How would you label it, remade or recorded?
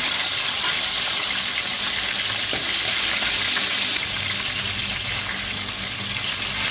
recorded